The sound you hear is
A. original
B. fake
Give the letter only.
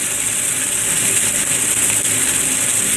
A